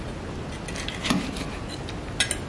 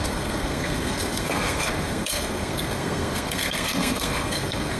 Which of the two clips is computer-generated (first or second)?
second